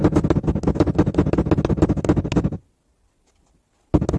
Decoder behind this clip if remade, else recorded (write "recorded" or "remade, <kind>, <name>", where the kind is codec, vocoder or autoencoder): recorded